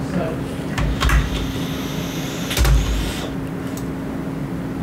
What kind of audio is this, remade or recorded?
recorded